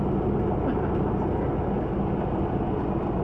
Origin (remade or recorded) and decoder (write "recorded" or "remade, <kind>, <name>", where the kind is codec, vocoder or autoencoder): recorded